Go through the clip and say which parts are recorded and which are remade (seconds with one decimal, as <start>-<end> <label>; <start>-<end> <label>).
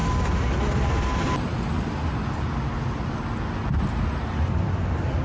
0.0-5.2 recorded